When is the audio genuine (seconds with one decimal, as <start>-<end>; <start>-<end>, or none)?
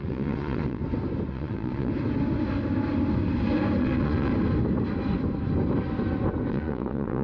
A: 0.8-1.3; 1.9-3.8; 4.3-6.5